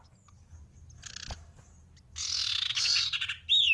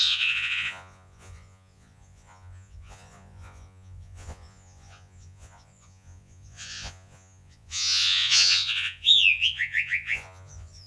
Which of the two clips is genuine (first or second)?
first